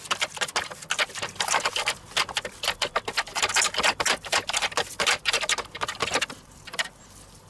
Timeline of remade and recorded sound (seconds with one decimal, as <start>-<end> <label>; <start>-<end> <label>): 0.0-3.3 recorded; 3.3-7.5 remade